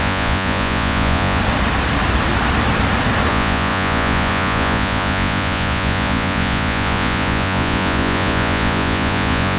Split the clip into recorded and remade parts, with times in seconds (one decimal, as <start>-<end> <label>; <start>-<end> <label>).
0.0-1.4 remade; 1.4-3.3 recorded; 3.3-9.6 remade